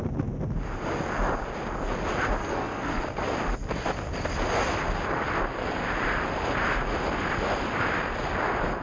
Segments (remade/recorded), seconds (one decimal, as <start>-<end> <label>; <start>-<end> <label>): 0.0-2.4 recorded; 2.4-3.0 remade; 3.0-8.8 recorded